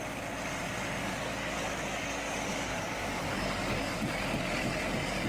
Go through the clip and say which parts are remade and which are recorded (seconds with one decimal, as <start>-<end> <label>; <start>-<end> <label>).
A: 0.0-1.0 recorded; 1.0-4.2 remade; 4.2-5.3 recorded